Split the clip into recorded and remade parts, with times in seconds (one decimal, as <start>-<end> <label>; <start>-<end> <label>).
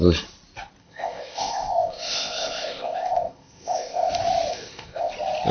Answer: 0.0-0.8 recorded; 0.8-4.1 remade; 4.1-4.5 recorded; 4.5-5.1 remade; 5.1-5.5 recorded